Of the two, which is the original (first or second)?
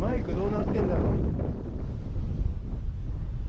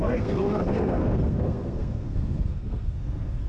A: first